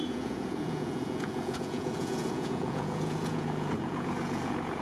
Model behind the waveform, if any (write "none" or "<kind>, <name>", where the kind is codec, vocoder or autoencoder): vocoder, Vocos